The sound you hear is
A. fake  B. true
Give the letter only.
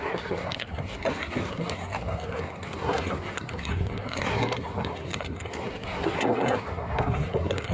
A